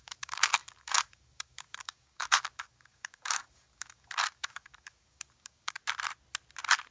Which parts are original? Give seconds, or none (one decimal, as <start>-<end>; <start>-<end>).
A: 5.8-6.9